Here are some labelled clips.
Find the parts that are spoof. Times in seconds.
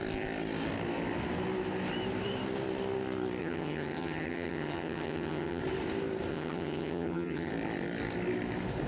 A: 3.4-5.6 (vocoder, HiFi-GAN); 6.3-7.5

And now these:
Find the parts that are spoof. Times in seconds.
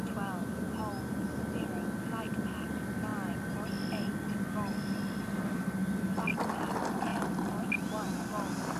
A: none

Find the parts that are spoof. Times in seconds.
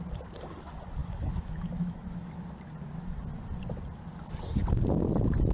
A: 1.0-2.2 (autoencoder, DAC-VAE)